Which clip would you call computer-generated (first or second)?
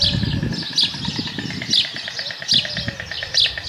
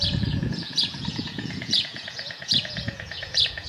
second